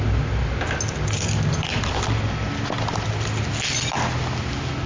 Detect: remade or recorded recorded